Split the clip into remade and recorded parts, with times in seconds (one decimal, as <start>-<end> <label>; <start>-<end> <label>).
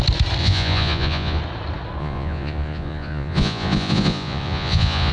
0.0-0.4 recorded; 0.4-1.4 remade; 1.4-2.0 recorded; 2.0-5.1 remade